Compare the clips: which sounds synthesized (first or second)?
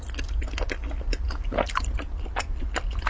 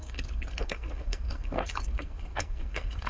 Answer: second